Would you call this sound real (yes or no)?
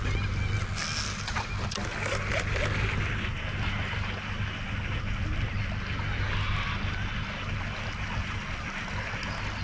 yes